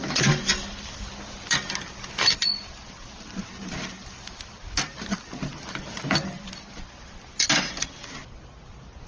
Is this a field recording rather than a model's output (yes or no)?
yes